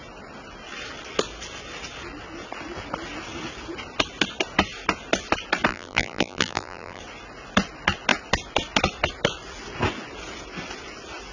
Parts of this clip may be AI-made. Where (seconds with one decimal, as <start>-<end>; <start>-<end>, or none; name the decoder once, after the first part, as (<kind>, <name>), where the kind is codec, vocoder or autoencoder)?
5.7-7.0 (vocoder, BigVGAN v2)